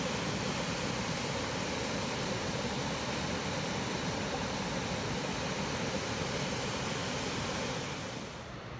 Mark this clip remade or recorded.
recorded